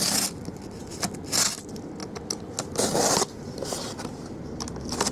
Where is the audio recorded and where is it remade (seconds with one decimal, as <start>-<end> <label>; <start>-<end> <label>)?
0.0-5.1 recorded